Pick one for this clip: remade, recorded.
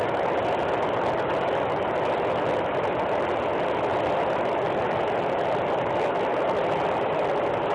recorded